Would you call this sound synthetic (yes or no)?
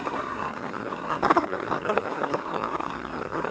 yes